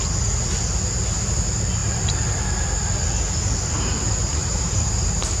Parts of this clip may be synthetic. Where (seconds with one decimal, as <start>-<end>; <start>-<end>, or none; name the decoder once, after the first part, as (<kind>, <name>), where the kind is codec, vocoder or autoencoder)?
4.4-5.4 (vocoder, BigVGAN v2)